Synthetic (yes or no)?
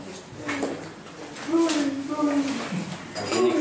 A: no